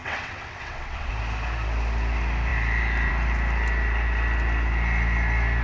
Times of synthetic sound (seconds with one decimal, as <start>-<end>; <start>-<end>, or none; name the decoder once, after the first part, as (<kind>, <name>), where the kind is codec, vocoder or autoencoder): 0.0-1.1 (vocoder, WaveNeXt)